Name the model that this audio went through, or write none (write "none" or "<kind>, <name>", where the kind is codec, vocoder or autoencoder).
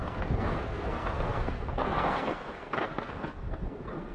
codec, SNAC